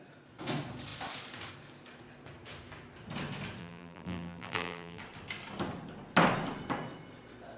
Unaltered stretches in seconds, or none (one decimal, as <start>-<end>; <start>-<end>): 0.0-3.6; 5.0-7.6